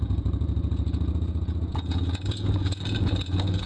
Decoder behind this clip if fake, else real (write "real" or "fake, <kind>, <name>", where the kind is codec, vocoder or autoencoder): fake, vocoder, Vocos